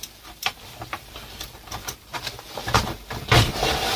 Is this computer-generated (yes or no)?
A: yes